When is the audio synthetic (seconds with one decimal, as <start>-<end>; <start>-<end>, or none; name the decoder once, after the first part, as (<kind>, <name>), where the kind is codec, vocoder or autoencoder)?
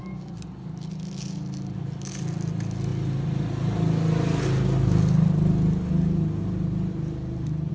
none